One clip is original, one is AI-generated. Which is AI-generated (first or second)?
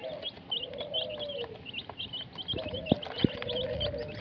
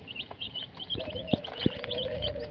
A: second